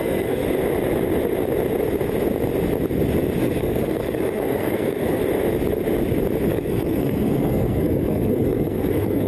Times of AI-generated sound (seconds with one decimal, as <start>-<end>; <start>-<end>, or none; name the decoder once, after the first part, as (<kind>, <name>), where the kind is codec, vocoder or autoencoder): 0.0-0.4 (codec, SNAC); 3.4-5.2; 6.5-9.3